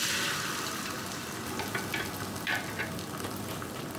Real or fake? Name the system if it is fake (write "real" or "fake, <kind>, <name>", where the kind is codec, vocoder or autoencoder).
real